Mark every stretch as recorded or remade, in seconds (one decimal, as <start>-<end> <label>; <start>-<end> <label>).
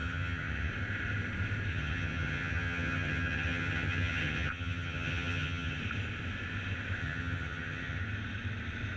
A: 0.0-0.7 remade; 0.7-1.7 recorded; 1.7-5.8 remade; 5.8-7.0 recorded; 7.0-8.0 remade; 8.0-9.0 recorded